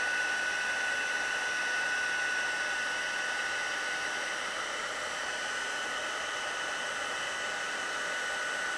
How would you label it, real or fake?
real